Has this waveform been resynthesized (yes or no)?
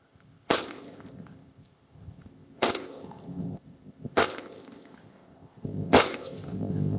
yes